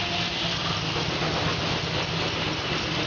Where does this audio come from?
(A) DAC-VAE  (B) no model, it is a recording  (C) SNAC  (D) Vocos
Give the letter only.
B